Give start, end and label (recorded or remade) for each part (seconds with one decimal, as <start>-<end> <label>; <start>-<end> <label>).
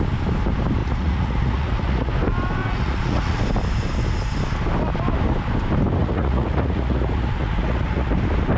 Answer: 0.0-0.8 recorded; 0.8-2.1 remade; 2.1-2.6 recorded; 2.6-3.4 remade; 3.4-6.0 recorded; 6.0-8.1 remade; 8.1-8.6 recorded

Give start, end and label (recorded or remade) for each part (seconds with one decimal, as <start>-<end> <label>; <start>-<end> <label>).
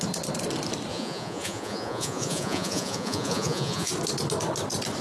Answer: 0.0-0.9 recorded; 0.9-3.9 remade; 3.9-5.0 recorded